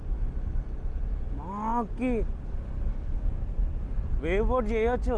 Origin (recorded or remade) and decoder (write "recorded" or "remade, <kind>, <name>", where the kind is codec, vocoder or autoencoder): recorded